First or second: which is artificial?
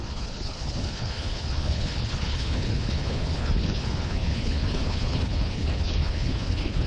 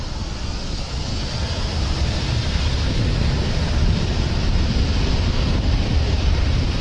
first